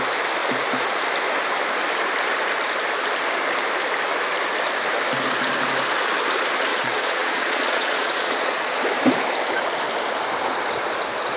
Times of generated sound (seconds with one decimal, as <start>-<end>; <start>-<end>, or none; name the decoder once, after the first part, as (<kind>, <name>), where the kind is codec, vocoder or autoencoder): 6.7-8.8 (vocoder, Vocos)